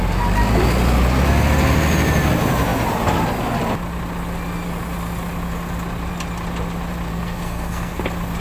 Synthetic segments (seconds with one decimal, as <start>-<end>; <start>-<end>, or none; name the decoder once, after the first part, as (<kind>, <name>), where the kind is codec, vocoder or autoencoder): 7.1-8.0 (codec, SNAC)